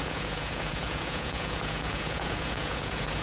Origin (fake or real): fake